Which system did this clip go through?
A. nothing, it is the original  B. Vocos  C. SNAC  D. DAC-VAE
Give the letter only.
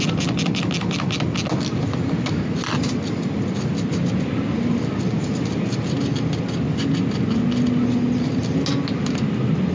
A